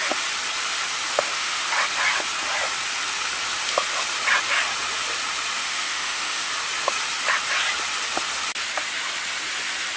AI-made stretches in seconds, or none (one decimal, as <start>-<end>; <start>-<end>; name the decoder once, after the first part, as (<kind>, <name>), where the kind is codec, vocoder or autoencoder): 1.1-1.7 (autoencoder, DAC-VAE); 5.6-6.5